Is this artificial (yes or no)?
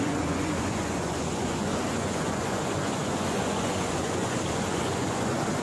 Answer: yes